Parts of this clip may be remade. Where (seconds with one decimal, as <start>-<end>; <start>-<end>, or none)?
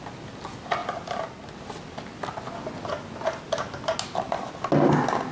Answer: none